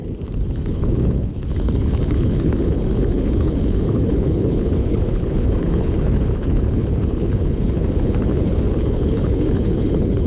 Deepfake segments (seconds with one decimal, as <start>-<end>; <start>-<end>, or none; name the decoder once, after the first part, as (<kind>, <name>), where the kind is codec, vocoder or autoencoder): 0.5-10.3 (codec, HILCodec)